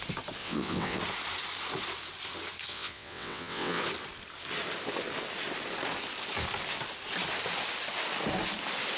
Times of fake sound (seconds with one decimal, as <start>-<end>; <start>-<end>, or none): 0.4-1.0; 2.7-3.8